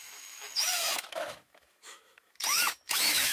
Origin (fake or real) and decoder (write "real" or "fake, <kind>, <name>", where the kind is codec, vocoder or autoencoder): fake, autoencoder, DAC-VAE